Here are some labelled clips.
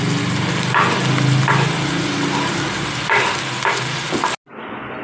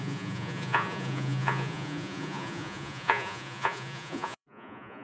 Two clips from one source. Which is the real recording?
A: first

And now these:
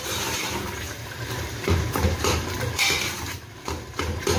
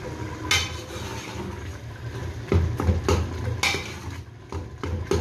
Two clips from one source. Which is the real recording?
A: second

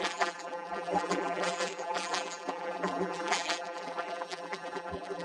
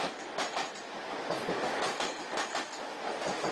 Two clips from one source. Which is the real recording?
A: second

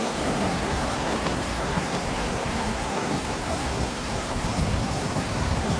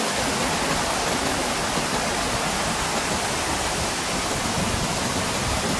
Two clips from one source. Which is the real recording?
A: second